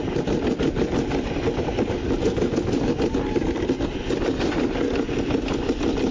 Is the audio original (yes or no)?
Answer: yes